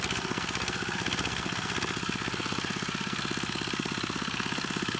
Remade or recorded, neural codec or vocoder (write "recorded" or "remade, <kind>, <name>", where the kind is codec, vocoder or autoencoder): remade, codec, SNAC